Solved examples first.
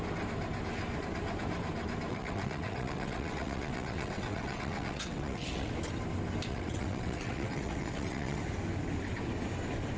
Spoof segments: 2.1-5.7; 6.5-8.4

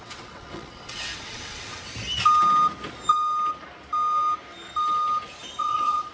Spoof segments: 0.0-1.9; 5.6-6.1

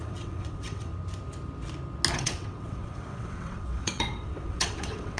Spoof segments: 0.0-0.9; 2.1-5.2